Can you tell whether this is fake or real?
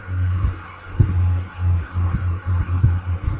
fake